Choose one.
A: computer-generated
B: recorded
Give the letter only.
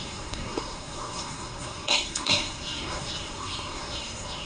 A